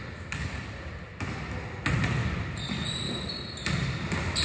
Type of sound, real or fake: real